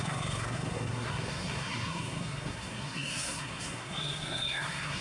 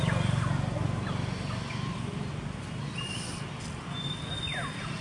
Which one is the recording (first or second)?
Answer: second